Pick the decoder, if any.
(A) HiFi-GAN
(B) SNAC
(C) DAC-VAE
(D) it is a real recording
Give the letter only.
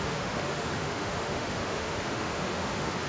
C